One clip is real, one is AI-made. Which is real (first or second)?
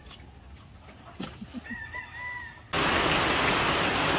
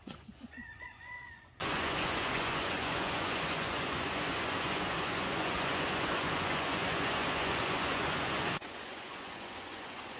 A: first